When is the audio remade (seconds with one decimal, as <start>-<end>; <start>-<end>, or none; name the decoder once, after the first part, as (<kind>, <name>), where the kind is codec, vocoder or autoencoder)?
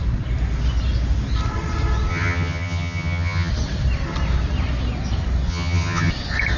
2.1-3.5 (vocoder, HiFi-GAN); 5.5-6.1